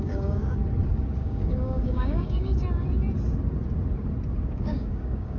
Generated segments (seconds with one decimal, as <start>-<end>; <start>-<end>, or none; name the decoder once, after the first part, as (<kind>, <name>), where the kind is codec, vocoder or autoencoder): 0.0-0.6 (codec, DAC); 1.2-2.6; 4.4-5.4